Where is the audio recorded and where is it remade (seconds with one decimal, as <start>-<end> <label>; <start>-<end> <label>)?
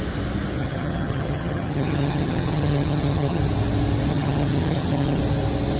0.0-0.6 recorded; 0.6-3.4 remade; 3.4-4.1 recorded; 4.1-5.2 remade; 5.2-5.8 recorded